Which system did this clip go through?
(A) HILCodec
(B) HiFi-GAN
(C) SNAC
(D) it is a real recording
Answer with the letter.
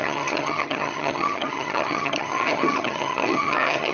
B